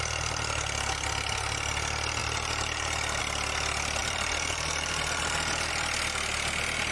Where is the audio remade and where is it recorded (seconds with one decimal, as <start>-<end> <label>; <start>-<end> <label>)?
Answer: 0.0-2.2 recorded; 2.2-3.2 remade; 3.2-4.0 recorded; 4.0-5.7 remade; 5.7-6.9 recorded